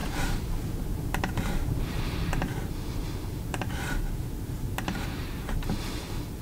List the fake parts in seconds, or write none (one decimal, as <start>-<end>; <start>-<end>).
0.0-2.0; 2.5-5.5